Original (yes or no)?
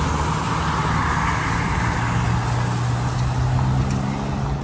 yes